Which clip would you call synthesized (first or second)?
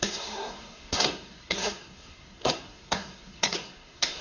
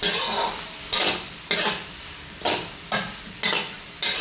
first